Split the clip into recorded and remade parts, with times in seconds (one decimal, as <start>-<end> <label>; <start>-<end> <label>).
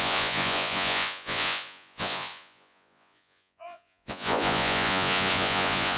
0.0-6.0 remade